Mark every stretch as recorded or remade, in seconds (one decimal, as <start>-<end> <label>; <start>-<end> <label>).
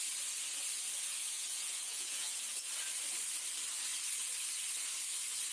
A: 0.0-1.2 recorded; 1.2-2.7 remade; 2.7-5.5 recorded